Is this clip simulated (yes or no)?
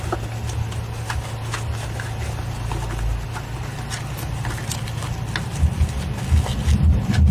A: no